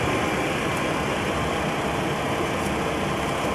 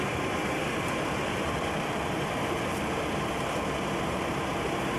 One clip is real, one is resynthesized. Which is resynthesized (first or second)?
second